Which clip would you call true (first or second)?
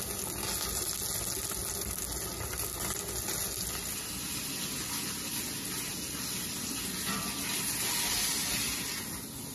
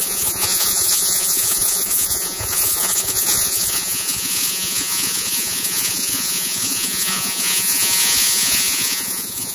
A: first